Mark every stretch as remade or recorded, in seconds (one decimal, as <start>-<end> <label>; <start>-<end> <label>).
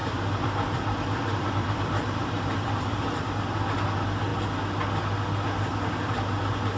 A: 0.0-3.1 remade; 3.1-6.8 recorded